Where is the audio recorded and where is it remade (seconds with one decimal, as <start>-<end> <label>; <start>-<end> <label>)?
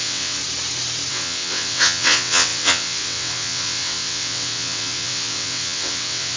0.0-0.4 remade; 0.4-1.1 recorded; 1.1-6.4 remade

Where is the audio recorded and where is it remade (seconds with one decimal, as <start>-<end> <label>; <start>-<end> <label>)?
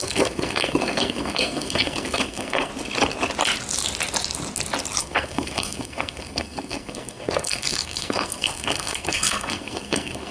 0.0-2.7 remade; 2.7-5.0 recorded; 5.0-10.3 remade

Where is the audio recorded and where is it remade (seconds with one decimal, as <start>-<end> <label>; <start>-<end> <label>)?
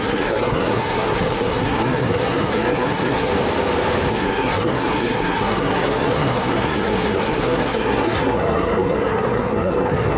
0.0-3.3 remade; 3.3-4.1 recorded; 4.1-10.2 remade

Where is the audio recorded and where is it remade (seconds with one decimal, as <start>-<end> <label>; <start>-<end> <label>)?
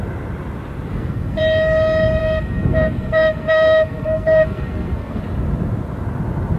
0.0-0.9 recorded; 0.9-1.4 remade; 1.4-2.2 recorded; 2.2-5.2 remade; 5.2-6.6 recorded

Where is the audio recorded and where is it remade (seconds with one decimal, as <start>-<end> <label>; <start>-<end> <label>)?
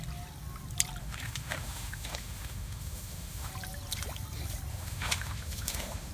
0.0-1.0 recorded; 1.0-3.5 remade; 3.5-4.7 recorded; 4.7-6.1 remade